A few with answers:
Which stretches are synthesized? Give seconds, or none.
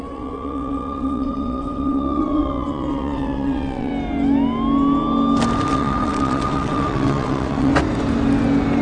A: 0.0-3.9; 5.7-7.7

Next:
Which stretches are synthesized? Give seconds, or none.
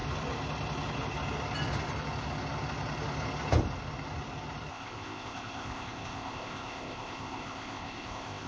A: 4.7-8.5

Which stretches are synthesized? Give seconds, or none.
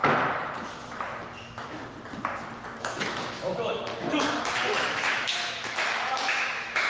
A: 1.4-1.8; 2.8-3.9; 4.4-6.9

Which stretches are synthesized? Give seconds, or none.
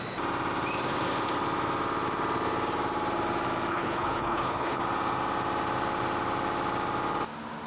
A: 3.7-4.8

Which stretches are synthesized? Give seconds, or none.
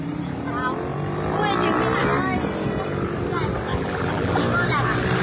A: 3.7-4.4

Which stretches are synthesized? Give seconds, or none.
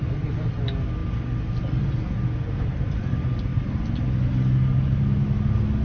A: none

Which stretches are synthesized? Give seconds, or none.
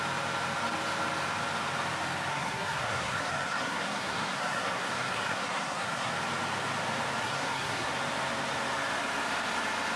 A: 2.3-6.1; 7.2-7.9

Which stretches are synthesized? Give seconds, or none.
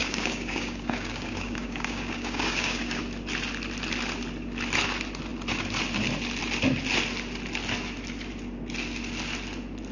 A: 0.0-3.0